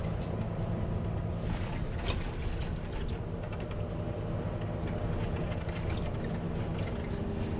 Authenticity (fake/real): real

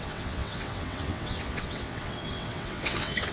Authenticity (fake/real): fake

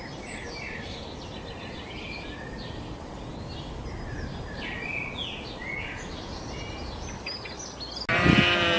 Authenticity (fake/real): real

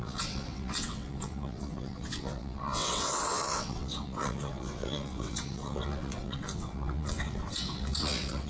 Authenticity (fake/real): fake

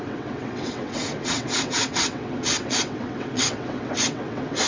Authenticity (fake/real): fake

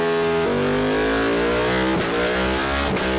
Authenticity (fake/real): real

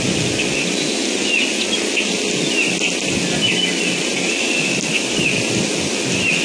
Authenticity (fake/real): real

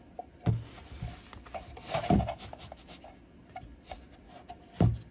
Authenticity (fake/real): real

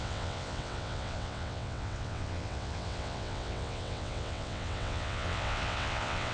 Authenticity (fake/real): fake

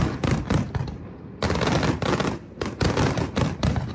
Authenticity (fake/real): real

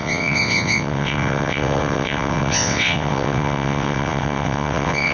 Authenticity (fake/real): fake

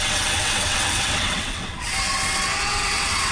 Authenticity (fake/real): fake